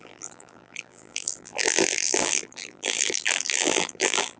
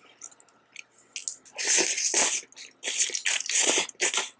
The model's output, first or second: first